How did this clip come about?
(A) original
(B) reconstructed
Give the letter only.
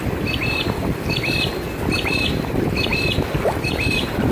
A